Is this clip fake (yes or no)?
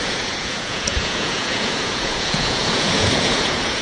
yes